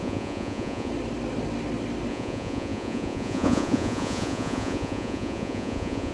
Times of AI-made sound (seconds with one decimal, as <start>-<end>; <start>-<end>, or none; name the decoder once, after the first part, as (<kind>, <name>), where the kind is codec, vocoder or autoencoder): 0.0-0.9 (vocoder, Vocos); 2.1-6.1